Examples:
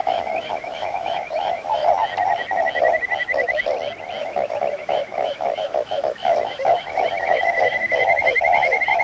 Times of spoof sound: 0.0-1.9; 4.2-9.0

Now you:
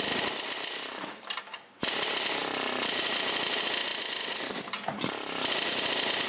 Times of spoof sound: 2.4-3.3

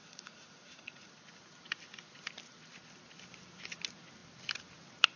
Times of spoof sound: 0.0-1.1

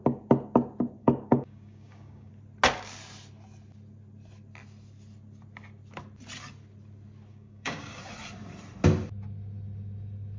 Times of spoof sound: 1.0-2.3; 7.3-8.0